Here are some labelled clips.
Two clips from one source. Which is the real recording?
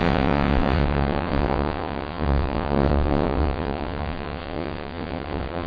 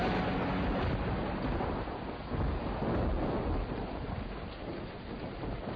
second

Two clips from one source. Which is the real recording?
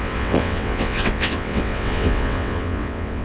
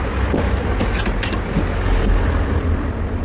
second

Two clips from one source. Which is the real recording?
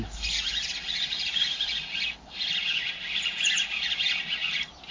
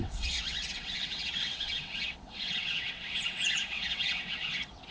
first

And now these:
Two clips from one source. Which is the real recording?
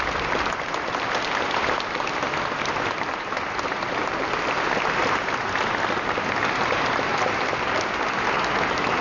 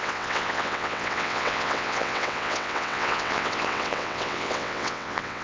first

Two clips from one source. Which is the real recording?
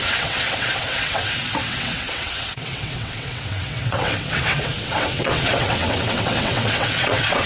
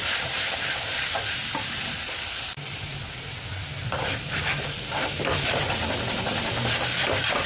second